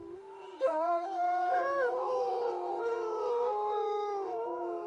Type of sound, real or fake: fake